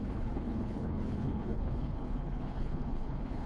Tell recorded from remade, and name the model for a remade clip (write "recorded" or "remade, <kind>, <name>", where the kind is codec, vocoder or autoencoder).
remade, codec, HILCodec